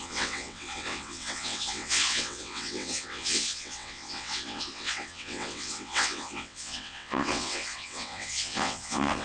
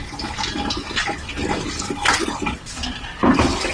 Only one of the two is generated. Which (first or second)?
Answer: first